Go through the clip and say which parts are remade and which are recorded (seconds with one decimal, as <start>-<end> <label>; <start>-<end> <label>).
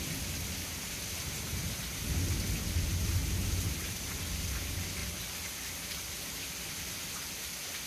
0.0-3.2 recorded; 3.2-4.2 remade; 4.2-5.0 recorded; 5.0-6.7 remade; 6.7-7.9 recorded